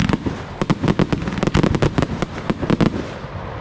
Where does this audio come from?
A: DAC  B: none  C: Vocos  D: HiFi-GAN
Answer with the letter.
B